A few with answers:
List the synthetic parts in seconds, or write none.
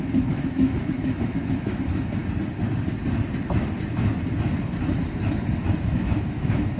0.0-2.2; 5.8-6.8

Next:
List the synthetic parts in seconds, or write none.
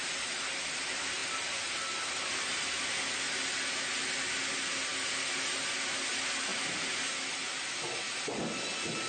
none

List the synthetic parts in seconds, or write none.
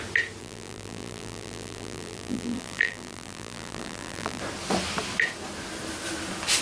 0.4-4.4